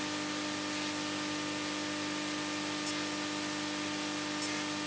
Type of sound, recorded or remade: recorded